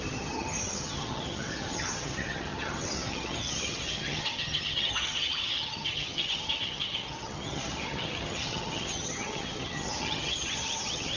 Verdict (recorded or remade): remade